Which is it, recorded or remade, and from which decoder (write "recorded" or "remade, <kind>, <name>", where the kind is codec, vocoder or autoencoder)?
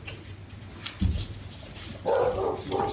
recorded